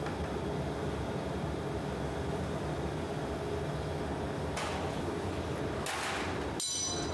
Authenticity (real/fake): real